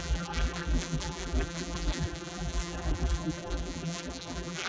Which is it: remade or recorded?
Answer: remade